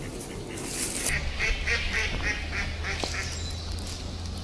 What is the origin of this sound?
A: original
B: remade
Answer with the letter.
A